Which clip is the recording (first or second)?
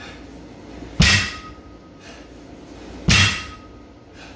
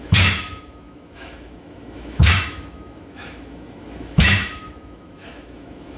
first